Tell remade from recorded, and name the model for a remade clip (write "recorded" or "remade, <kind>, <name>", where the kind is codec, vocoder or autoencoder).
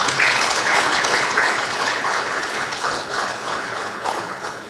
remade, codec, HILCodec